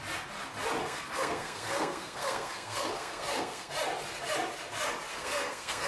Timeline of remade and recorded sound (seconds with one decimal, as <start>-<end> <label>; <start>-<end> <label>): 0.0-0.8 recorded; 0.8-3.7 remade; 3.7-5.1 recorded; 5.1-5.9 remade